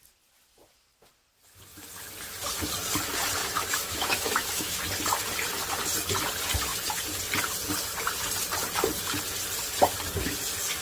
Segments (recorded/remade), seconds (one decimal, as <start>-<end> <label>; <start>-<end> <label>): 0.0-3.4 recorded; 3.4-4.8 remade; 4.8-10.8 recorded